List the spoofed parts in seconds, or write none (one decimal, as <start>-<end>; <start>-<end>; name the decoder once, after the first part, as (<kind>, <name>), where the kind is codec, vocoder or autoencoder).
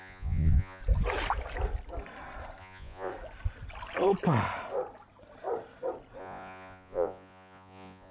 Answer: 0.0-0.8 (vocoder, Vocos); 2.6-3.1; 6.2-8.1